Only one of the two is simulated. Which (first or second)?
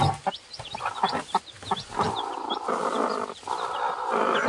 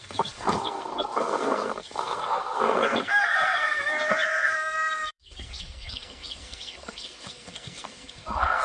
second